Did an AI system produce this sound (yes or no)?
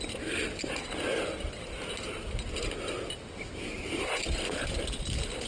no